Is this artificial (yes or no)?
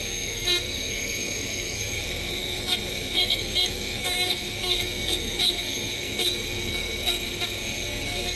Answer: yes